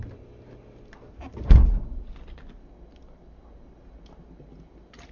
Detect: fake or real real